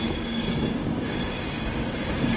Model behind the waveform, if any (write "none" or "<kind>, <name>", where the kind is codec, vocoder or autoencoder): codec, DAC